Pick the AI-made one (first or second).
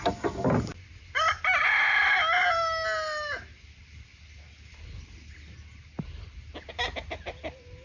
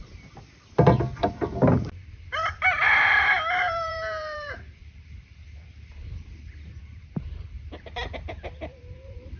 second